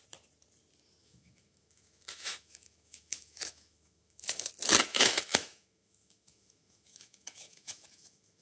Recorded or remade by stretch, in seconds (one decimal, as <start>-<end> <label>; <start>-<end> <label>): 0.0-1.0 recorded; 1.0-4.5 remade; 4.5-4.9 recorded; 4.9-8.4 remade